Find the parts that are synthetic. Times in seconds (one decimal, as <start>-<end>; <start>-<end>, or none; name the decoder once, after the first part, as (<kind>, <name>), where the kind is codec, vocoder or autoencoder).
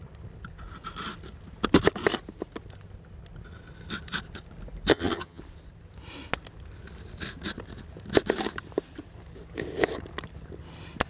4.9-5.4 (vocoder, HiFi-GAN)